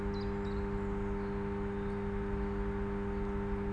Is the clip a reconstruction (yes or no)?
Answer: no